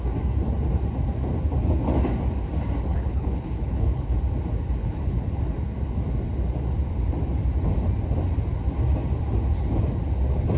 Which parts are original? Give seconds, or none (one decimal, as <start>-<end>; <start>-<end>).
0.0-2.9; 4.2-4.8; 5.4-10.6